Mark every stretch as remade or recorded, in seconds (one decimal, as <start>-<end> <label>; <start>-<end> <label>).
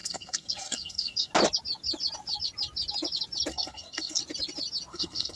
0.0-1.3 remade; 1.3-3.5 recorded; 3.5-4.2 remade; 4.2-4.9 recorded; 4.9-5.4 remade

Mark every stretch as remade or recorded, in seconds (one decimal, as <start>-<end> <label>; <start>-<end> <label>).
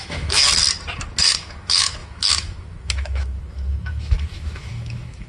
0.0-0.4 remade; 0.4-1.2 recorded; 1.2-5.3 remade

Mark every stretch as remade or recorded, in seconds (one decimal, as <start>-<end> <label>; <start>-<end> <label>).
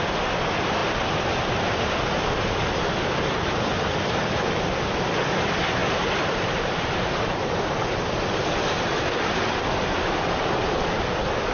0.0-5.8 recorded; 5.8-7.7 remade; 7.7-11.5 recorded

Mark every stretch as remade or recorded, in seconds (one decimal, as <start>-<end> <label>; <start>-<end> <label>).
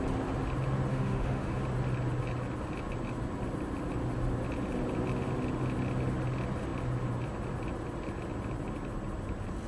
0.0-0.9 recorded; 0.9-1.6 remade; 1.6-9.7 recorded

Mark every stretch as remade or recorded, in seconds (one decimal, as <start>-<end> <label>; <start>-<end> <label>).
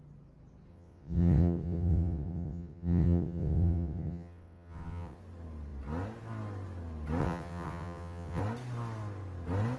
0.0-0.7 recorded; 0.7-5.2 remade; 5.2-7.2 recorded; 7.2-8.4 remade; 8.4-9.8 recorded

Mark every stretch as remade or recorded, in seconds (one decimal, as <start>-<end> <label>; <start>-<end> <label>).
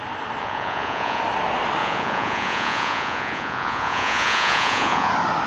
0.0-0.4 recorded; 0.4-1.2 remade; 1.2-1.8 recorded; 1.8-5.1 remade; 5.1-5.5 recorded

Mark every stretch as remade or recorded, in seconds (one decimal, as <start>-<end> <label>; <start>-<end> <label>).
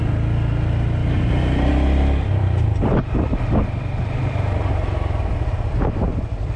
0.0-2.4 recorded; 2.4-4.7 remade; 4.7-6.6 recorded